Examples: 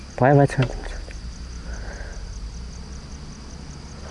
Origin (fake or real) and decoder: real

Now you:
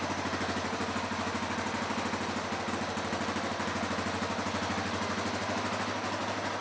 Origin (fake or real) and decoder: real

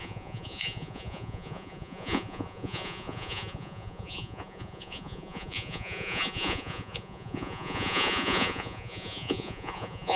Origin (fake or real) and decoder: fake, vocoder, Vocos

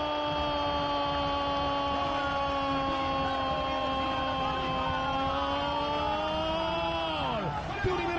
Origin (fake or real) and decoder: real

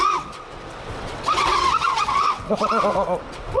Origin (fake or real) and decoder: fake, vocoder, WaveNeXt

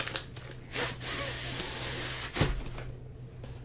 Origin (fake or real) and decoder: real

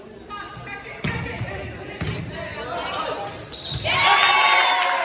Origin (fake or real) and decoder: real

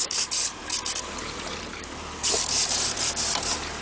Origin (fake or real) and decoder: fake, vocoder, BigVGAN v2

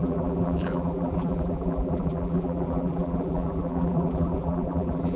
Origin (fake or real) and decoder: fake, vocoder, BigVGAN v2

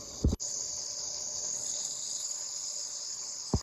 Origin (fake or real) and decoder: fake, codec, HILCodec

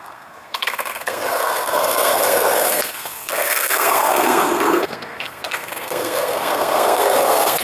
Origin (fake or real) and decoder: fake, codec, SNAC